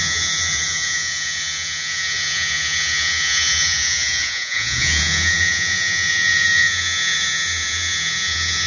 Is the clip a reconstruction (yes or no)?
yes